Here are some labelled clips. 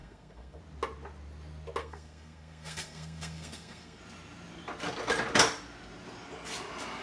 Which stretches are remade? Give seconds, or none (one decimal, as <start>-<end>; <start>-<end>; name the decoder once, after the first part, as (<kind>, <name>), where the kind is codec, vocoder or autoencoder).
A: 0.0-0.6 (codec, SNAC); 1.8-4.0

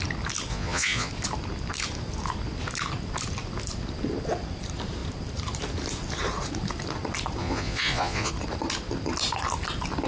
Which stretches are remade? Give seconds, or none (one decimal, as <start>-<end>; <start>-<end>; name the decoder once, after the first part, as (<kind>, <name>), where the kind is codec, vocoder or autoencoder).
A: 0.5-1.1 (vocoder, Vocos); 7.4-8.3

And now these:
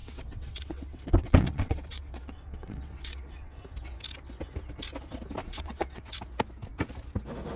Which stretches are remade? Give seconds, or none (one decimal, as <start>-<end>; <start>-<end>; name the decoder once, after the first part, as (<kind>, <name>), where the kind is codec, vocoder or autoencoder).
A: 0.0-3.6 (vocoder, WaveNeXt); 5.4-6.0

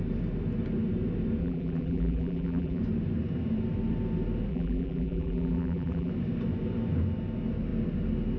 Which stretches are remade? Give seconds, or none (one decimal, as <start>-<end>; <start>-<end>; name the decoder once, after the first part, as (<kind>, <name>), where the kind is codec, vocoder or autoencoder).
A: 1.4-2.8 (vocoder, BigVGAN v2); 4.5-6.1